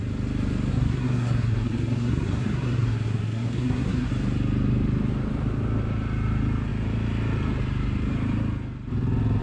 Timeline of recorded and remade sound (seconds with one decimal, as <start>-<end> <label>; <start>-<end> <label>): 0.0-0.7 recorded; 0.7-4.1 remade; 4.1-9.4 recorded